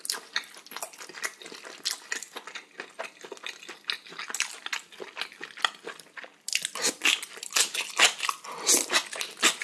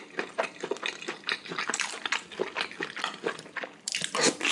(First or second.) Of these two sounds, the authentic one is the first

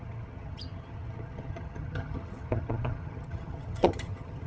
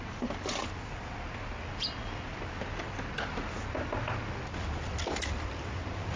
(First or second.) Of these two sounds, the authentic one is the second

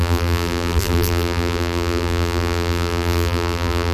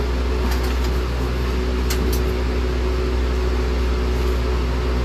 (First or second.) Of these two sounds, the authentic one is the second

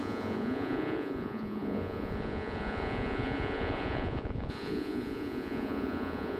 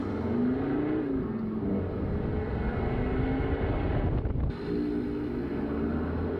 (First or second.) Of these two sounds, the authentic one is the second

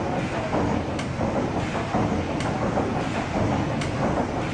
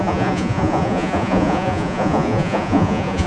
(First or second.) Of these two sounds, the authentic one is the first